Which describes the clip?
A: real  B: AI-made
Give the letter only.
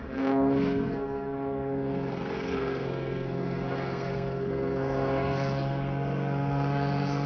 B